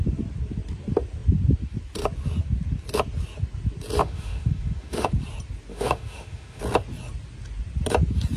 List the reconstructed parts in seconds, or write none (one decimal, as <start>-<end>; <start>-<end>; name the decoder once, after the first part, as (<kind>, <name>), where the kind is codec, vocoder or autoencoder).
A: 4.0-5.1 (autoencoder, DAC-VAE); 5.7-6.6